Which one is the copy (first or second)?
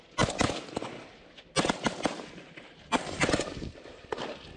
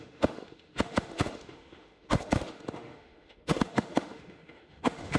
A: second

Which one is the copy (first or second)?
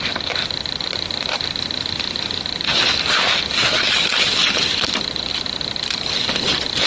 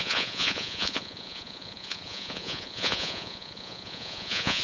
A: second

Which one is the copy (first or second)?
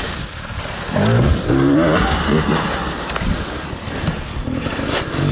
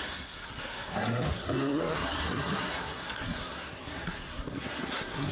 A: second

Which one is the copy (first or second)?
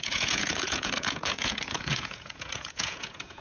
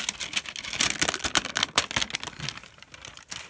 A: first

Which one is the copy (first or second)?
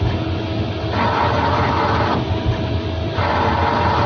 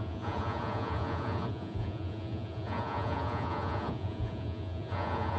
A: second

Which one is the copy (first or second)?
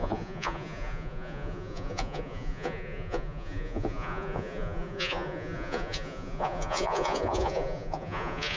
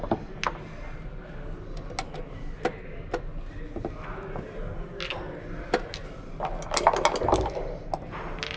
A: first